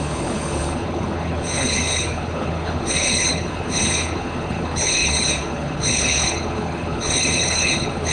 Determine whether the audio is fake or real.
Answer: fake